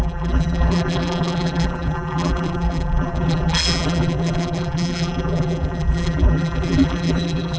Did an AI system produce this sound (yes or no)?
yes